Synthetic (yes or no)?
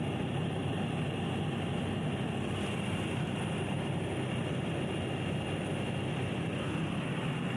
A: no